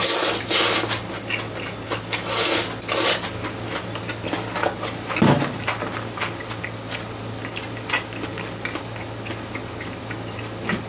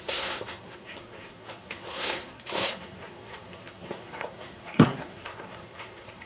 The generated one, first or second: second